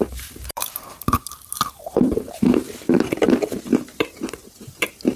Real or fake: fake